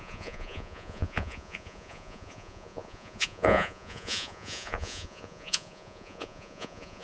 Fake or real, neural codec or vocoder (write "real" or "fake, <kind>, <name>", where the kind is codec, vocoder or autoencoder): fake, vocoder, Vocos